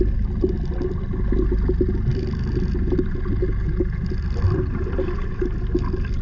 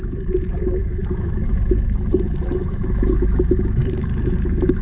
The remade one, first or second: second